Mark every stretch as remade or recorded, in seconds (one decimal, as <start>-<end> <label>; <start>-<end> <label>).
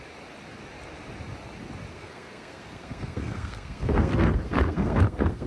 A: 0.0-1.9 recorded; 1.9-5.5 remade